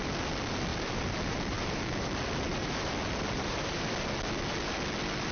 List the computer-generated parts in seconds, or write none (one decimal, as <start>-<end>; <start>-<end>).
0.7-3.9